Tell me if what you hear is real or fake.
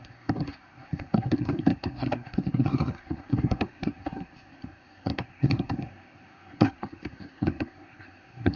fake